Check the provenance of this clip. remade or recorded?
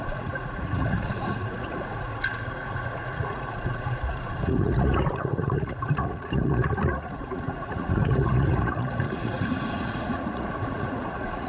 remade